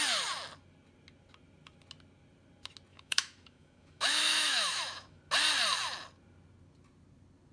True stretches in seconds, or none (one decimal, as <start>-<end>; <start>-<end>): 0.0-2.9; 5.2-7.5